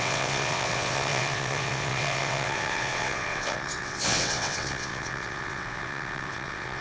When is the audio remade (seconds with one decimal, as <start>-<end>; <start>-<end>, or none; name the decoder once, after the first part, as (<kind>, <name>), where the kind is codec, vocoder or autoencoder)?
0.0-6.8 (vocoder, WaveNeXt)